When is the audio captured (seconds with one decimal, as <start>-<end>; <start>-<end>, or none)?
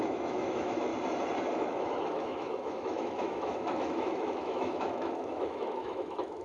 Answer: 0.9-1.5